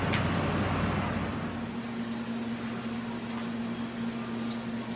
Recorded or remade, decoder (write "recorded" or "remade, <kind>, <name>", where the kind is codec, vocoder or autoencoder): recorded